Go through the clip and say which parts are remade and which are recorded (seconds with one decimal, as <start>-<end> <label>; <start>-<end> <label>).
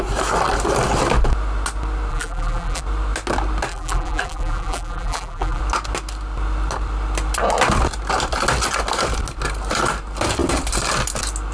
0.0-2.1 recorded; 2.1-2.8 remade; 2.8-3.7 recorded; 3.7-5.6 remade; 5.6-11.5 recorded